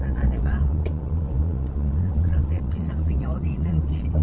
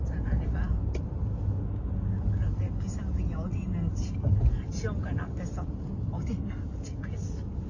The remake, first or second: first